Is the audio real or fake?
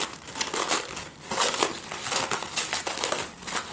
real